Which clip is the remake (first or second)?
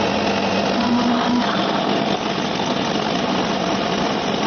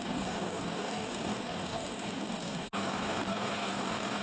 second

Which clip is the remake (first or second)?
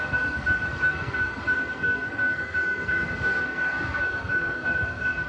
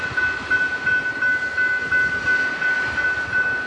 first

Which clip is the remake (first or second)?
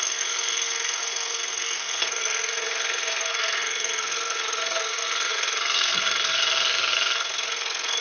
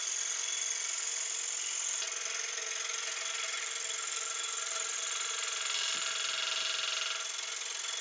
first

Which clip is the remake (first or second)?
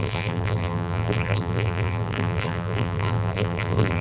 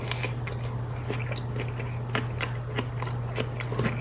first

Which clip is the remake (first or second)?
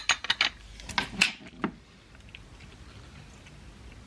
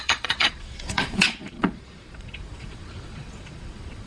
second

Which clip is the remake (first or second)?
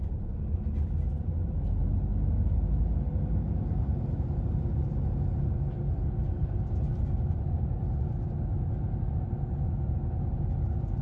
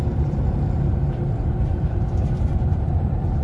second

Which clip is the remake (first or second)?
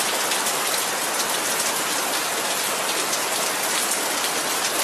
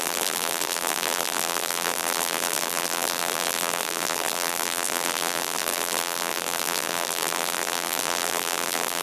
second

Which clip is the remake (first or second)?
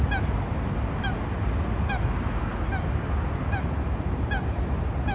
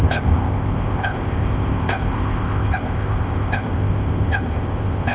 second